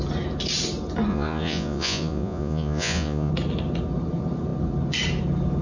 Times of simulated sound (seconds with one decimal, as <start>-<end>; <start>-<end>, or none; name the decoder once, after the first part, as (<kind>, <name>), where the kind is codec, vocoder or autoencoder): 1.1-3.3 (vocoder, Vocos)